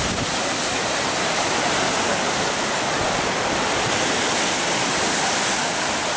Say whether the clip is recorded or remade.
recorded